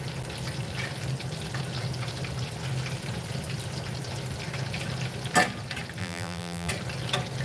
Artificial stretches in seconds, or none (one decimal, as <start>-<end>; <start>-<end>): 6.0-6.7